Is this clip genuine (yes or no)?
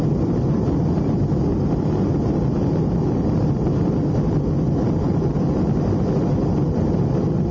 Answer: yes